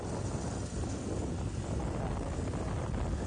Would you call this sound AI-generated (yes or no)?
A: no